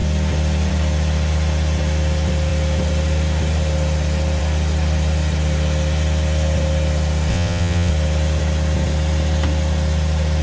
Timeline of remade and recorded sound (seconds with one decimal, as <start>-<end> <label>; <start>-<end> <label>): 0.0-7.3 recorded; 7.3-7.9 remade; 7.9-10.4 recorded